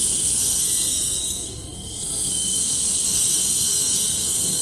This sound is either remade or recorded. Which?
remade